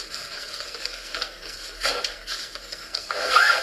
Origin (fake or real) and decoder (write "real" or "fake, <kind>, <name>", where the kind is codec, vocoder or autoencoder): fake, codec, SNAC